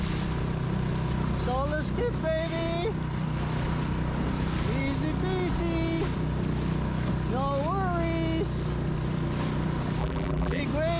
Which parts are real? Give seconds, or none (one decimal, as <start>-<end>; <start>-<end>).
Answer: 0.0-10.0; 10.6-11.0